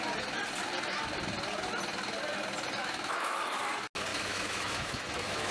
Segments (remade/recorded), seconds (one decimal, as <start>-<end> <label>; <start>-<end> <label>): 0.0-2.8 recorded; 2.8-3.6 remade; 3.6-4.1 recorded; 4.1-5.5 remade